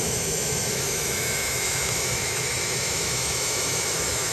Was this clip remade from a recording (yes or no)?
yes